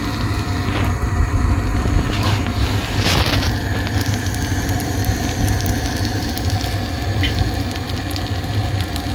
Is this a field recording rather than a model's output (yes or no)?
yes